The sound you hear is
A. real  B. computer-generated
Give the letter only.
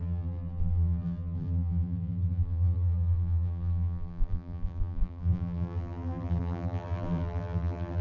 B